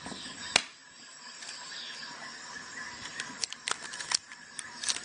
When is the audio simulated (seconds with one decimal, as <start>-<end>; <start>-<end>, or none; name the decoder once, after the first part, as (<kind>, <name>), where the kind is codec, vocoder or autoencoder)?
none